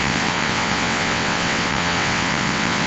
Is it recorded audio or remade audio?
remade